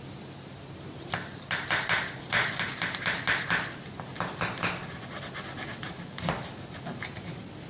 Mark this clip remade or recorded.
recorded